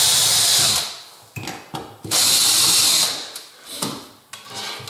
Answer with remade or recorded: recorded